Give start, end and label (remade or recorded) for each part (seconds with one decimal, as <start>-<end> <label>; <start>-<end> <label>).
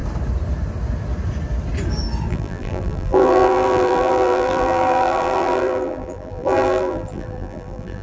0.0-2.3 recorded; 2.3-8.0 remade